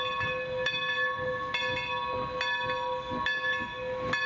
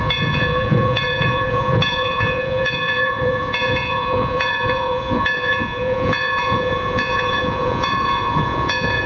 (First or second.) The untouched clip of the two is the first